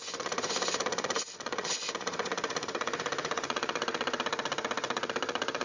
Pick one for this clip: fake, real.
fake